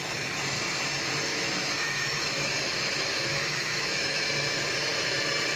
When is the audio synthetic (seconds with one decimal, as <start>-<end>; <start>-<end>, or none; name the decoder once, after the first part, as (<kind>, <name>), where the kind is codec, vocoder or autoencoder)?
1.3-4.3 (autoencoder, DAC-VAE)